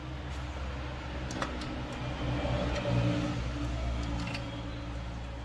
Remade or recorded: recorded